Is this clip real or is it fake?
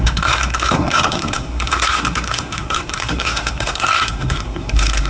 fake